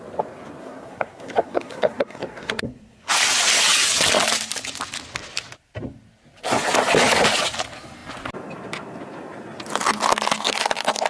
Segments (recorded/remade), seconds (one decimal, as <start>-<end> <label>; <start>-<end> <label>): 0.0-0.6 recorded; 0.6-3.1 remade; 3.1-11.1 recorded